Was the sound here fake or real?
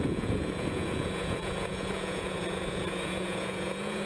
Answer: fake